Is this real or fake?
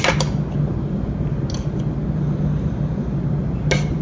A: real